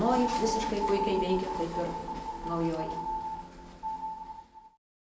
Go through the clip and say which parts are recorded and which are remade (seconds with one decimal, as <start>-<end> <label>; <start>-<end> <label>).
0.0-5.1 recorded